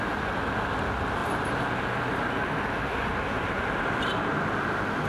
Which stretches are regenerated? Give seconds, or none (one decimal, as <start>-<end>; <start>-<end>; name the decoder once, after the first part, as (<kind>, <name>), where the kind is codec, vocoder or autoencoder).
none